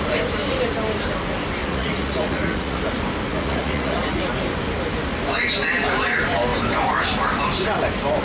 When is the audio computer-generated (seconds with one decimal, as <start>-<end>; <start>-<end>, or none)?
1.6-2.8; 3.3-4.3